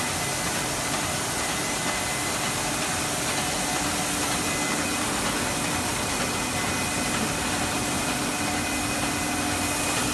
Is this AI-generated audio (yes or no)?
no